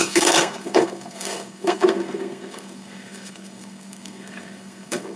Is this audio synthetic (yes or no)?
yes